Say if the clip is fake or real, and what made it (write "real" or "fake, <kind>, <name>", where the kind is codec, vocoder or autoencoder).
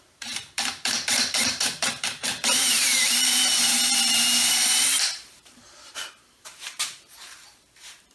fake, vocoder, BigVGAN v2